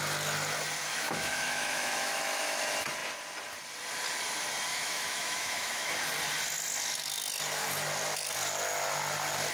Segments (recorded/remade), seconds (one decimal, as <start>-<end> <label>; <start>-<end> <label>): 0.0-0.9 recorded; 0.9-2.6 remade; 2.6-4.7 recorded; 4.7-5.9 remade; 5.9-9.5 recorded